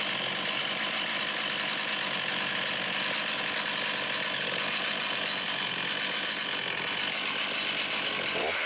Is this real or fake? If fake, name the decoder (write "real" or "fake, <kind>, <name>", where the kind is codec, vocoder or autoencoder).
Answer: real